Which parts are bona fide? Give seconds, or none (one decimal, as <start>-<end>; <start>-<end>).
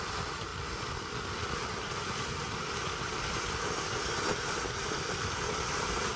0.0-6.2